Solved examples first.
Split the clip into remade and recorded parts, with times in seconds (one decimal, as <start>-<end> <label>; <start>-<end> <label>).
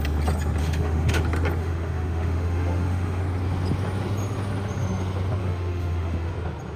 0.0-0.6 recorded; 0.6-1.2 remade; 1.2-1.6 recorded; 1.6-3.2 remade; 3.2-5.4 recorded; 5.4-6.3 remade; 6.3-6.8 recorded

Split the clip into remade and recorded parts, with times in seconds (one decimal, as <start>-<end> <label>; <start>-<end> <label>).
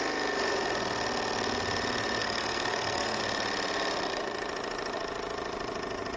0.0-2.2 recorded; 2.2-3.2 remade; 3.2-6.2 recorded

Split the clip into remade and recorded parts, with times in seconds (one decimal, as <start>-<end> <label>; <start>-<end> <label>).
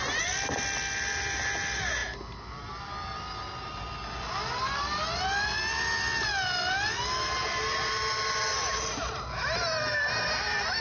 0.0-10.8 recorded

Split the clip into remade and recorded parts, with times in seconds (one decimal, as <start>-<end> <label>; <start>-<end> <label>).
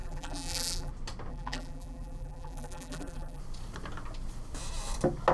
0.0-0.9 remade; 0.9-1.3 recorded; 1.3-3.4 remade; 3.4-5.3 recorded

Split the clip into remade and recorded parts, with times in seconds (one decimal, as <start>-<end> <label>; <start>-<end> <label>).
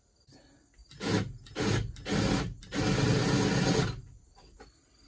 0.0-5.1 recorded